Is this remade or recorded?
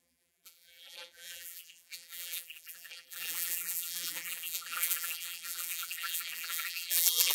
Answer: remade